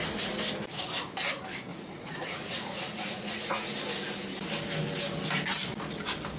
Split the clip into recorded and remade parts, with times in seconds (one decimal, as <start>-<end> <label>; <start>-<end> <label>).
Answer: 0.0-1.7 recorded; 1.7-3.7 remade; 3.7-6.4 recorded